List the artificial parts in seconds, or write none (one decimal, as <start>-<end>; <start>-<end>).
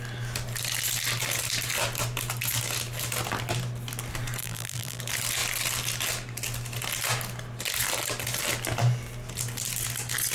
4.4-5.0